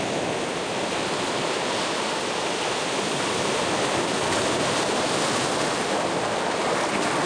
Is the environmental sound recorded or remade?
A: recorded